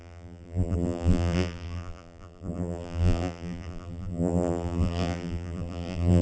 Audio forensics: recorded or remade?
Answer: remade